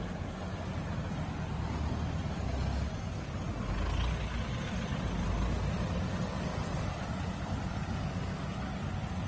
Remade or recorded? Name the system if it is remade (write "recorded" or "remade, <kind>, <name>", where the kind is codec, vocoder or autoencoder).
recorded